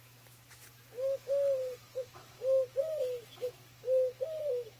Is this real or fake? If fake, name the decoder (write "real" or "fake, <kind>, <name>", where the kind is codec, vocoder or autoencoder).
fake, autoencoder, DAC-VAE